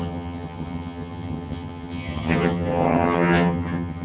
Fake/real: fake